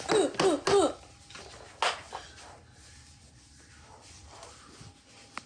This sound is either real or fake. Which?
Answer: real